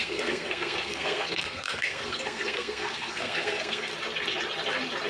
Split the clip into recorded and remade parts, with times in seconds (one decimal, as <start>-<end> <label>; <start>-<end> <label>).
0.0-3.9 remade; 3.9-5.1 recorded